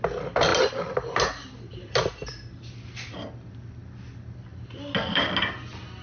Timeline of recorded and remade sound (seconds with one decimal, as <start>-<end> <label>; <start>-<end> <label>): 0.0-6.0 recorded